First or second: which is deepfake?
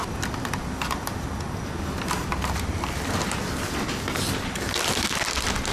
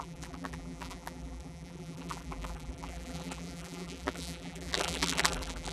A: second